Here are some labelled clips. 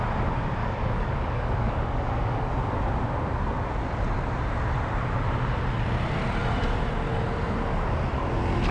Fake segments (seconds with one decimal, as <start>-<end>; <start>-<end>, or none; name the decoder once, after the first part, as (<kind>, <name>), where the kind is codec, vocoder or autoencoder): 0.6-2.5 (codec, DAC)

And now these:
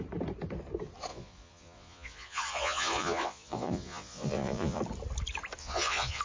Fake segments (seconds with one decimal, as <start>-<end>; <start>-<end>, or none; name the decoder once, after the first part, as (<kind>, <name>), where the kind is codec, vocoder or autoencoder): 1.1-4.8 (vocoder, Vocos); 5.6-6.2

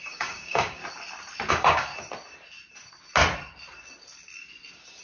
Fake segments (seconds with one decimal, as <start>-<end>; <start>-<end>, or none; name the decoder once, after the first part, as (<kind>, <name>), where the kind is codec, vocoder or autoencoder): 0.0-0.8 (codec, DAC); 1.5-1.9

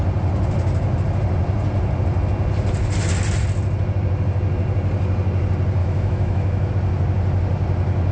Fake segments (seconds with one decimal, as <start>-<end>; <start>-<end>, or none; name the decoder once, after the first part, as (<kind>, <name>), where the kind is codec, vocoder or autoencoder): 5.8-6.7 (autoencoder, DAC-VAE)